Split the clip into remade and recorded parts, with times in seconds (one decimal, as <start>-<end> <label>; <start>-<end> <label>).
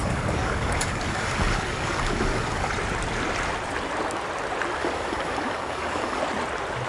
0.0-2.7 remade; 2.7-4.8 recorded; 4.8-6.2 remade; 6.2-6.9 recorded